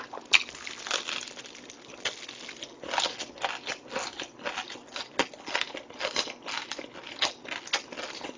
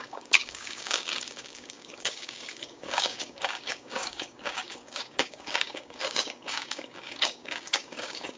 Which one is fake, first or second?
second